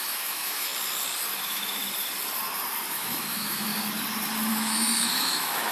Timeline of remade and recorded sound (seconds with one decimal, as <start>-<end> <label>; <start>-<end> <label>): 0.0-0.7 remade; 0.7-1.4 recorded; 1.4-1.8 remade; 1.8-2.9 recorded; 2.9-3.7 remade; 3.7-4.5 recorded; 4.5-5.7 remade